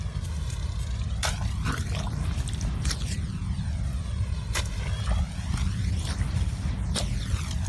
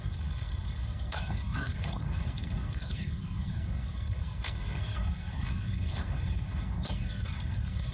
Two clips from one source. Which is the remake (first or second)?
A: second